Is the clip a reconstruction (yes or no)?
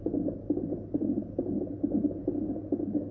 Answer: no